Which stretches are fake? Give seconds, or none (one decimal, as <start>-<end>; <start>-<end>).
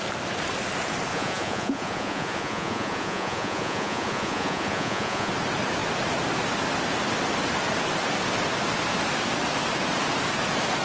1.1-5.3